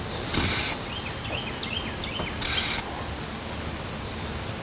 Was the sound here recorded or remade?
recorded